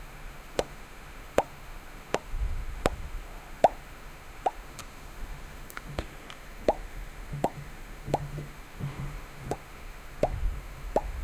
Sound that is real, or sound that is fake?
fake